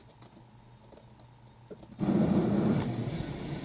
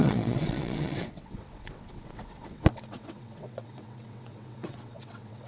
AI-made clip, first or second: second